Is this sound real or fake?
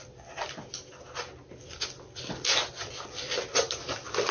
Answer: real